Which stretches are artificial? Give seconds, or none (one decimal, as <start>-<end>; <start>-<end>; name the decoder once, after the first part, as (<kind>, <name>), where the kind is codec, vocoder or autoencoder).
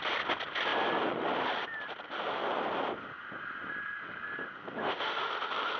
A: 4.8-5.3 (autoencoder, DAC-VAE)